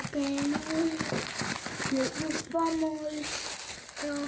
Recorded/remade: recorded